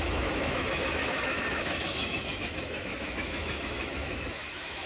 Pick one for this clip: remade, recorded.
remade